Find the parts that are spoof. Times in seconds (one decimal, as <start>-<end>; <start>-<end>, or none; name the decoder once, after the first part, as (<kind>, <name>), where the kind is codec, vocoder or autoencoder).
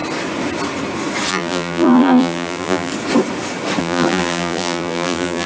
1.3-2.9 (vocoder, BigVGAN v2); 3.8-5.5